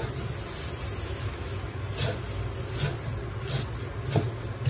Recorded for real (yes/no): yes